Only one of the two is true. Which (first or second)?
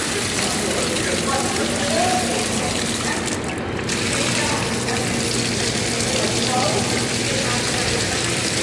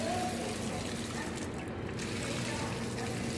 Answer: second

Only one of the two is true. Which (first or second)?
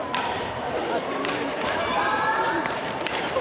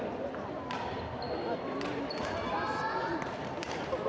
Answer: second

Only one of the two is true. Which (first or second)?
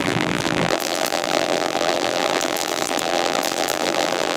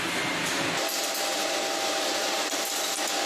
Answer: second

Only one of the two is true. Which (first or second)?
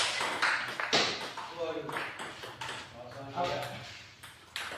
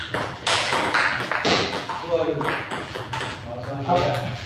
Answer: first